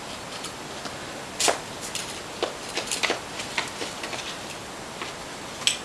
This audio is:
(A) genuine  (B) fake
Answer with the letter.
A